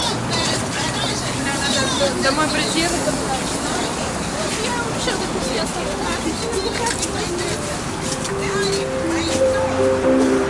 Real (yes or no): yes